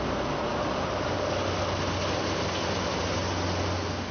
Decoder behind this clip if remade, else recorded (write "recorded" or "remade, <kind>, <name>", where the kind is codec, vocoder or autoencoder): recorded